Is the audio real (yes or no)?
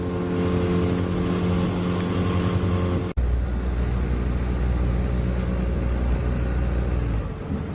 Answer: yes